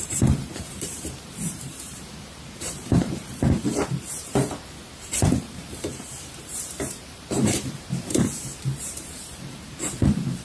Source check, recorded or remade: remade